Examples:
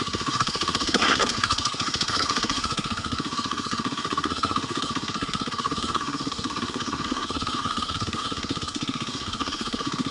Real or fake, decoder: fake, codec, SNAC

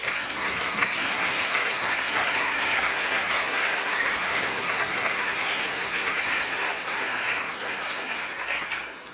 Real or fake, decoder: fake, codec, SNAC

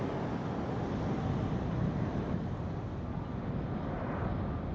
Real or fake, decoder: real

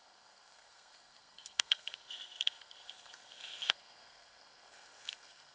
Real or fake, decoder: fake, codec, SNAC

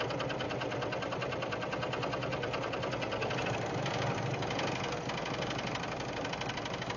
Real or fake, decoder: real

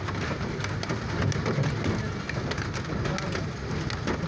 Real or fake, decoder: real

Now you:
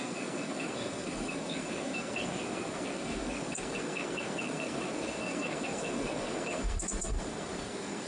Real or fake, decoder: fake, codec, SNAC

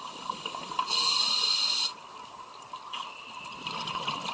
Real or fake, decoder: real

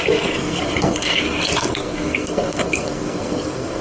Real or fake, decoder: fake, codec, SNAC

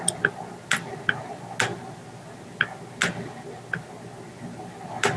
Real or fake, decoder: real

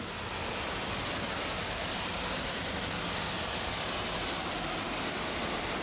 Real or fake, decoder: real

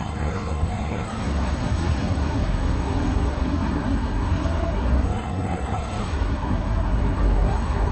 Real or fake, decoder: fake, codec, SNAC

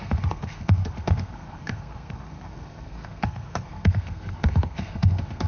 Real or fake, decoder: fake, codec, SNAC